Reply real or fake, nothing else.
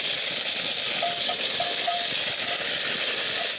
real